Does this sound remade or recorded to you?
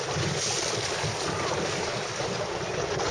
remade